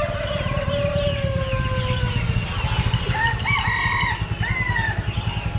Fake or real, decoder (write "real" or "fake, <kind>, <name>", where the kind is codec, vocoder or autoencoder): real